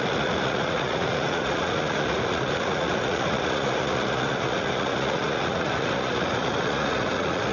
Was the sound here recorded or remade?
remade